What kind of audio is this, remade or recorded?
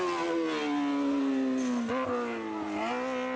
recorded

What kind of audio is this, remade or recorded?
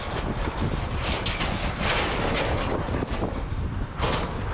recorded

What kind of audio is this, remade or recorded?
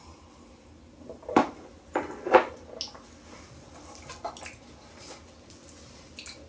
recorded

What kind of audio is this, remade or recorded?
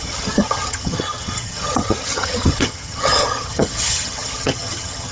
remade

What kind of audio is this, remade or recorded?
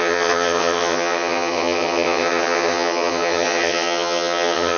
remade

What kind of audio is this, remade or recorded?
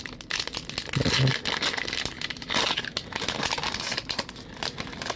recorded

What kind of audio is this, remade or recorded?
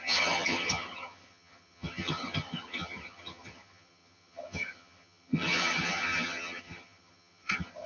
remade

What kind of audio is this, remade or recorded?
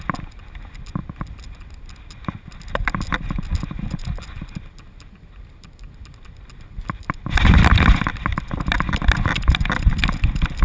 recorded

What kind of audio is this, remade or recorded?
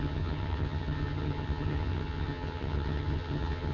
remade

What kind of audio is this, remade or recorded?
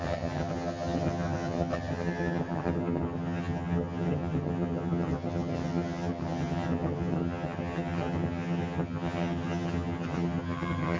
remade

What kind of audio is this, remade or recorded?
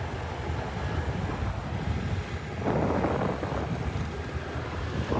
recorded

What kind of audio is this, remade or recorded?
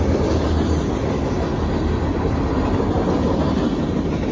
recorded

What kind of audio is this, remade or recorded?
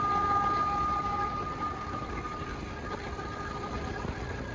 recorded